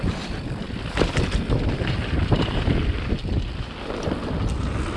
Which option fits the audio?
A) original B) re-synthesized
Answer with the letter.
A